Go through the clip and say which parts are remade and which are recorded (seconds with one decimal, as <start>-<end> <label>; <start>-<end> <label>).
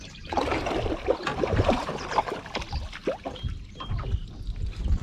0.0-5.0 recorded